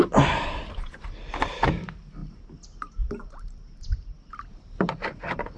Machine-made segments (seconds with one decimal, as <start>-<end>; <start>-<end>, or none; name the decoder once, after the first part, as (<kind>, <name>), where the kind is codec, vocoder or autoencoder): 0.0-5.6 (vocoder, BigVGAN v2)